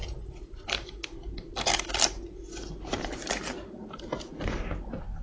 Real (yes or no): yes